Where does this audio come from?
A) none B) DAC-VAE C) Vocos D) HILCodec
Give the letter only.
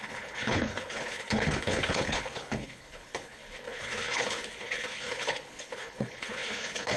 D